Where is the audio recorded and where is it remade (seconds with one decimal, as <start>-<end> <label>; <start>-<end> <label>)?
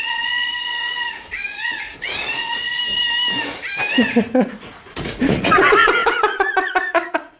0.0-2.8 remade; 2.8-3.9 recorded; 3.9-7.4 remade